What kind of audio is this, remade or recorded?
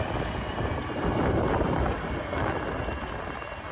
recorded